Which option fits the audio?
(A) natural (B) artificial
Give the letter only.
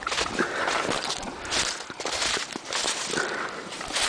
B